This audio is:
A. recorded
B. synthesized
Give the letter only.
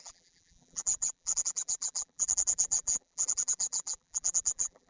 B